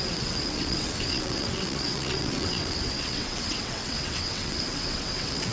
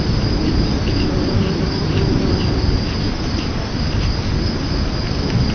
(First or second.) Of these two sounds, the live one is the second